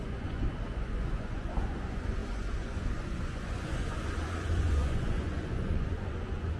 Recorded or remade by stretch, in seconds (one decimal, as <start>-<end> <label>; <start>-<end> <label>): 0.0-6.6 remade